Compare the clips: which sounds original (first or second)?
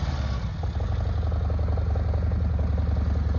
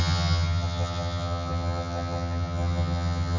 first